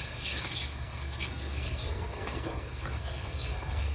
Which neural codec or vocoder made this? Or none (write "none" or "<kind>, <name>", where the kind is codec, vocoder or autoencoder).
codec, SNAC